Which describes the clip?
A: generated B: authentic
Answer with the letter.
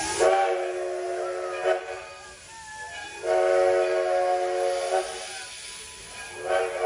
B